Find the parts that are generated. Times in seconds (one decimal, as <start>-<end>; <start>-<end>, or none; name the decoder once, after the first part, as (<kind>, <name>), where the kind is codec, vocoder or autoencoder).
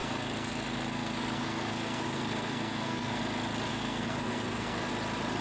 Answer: 0.0-3.2 (codec, SNAC); 3.7-4.9